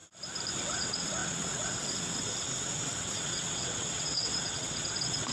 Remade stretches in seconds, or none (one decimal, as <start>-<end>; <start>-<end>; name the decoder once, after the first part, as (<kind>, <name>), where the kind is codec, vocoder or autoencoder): 0.6-5.3 (vocoder, WaveNeXt)